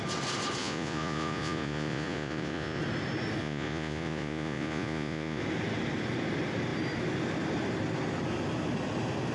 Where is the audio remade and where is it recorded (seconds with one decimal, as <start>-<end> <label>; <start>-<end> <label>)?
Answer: 0.0-0.6 recorded; 0.6-2.8 remade; 2.8-3.4 recorded; 3.4-5.4 remade; 5.4-9.3 recorded